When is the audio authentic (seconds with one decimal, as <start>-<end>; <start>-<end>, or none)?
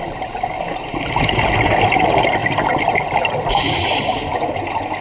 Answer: 0.0-5.0